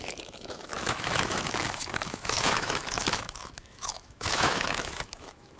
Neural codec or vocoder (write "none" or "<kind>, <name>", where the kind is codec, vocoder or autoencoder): autoencoder, DAC-VAE